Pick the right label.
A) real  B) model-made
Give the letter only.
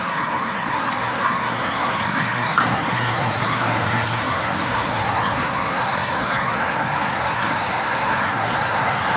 B